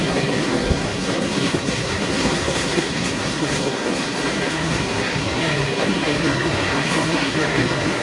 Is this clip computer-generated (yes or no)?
yes